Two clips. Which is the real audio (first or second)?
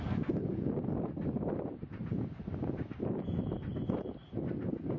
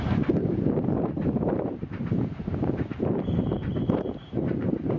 first